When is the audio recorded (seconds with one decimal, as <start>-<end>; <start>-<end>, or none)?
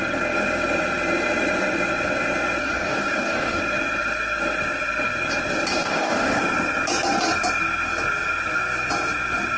0.0-2.6; 3.6-5.7; 6.4-9.6